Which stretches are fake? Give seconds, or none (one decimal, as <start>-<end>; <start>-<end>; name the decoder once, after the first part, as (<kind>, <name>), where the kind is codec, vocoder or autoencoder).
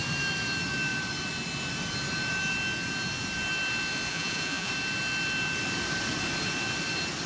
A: 4.1-4.7 (vocoder, Vocos)